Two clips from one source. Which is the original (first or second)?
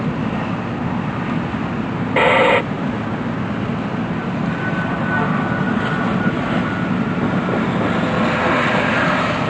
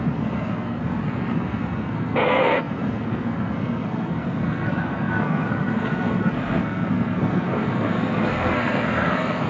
first